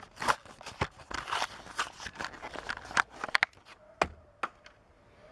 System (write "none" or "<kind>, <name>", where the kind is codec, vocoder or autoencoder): none